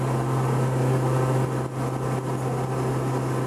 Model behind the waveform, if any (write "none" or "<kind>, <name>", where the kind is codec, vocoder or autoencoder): none